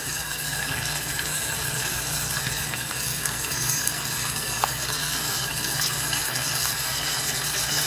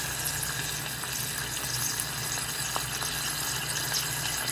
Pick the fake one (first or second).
first